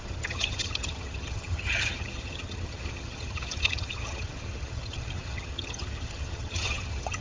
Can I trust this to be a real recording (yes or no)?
no